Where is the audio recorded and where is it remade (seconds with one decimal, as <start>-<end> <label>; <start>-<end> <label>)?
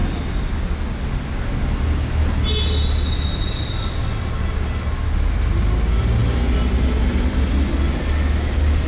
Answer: 0.0-8.9 recorded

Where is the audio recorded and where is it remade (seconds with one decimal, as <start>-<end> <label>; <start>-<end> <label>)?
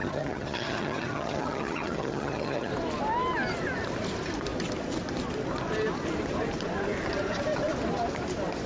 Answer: 0.0-2.7 remade; 2.7-8.7 recorded